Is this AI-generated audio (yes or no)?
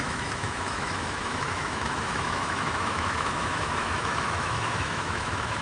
yes